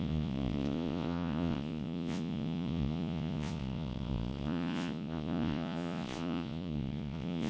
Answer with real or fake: fake